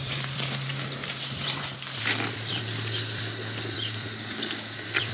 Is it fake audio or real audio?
fake